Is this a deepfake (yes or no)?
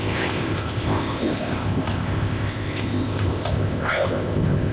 yes